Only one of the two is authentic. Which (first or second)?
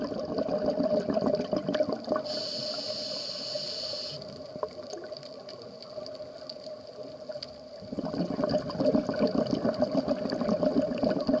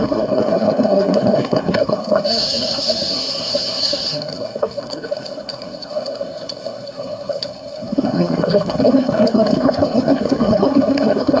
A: first